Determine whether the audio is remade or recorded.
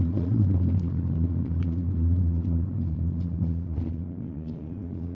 remade